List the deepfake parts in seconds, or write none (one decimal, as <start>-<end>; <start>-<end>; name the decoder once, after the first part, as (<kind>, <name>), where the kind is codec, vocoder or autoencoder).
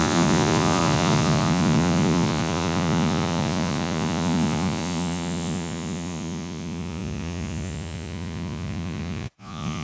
0.0-9.8 (vocoder, Vocos)